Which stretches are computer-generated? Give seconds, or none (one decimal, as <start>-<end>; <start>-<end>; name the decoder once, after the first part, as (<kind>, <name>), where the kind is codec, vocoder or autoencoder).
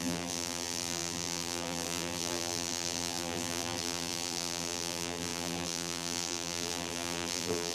0.0-7.7 (vocoder, BigVGAN v2)